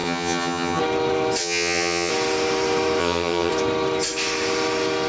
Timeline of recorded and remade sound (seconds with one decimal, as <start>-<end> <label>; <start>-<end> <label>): 0.0-0.8 remade; 0.8-1.4 recorded; 1.4-2.1 remade; 2.1-3.0 recorded; 3.0-3.5 remade; 3.5-5.1 recorded